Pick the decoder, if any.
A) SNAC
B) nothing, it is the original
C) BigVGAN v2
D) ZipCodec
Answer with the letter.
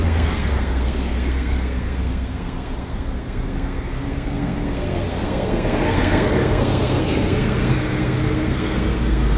A